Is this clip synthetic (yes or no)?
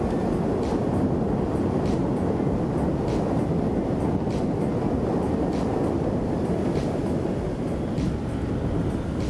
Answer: no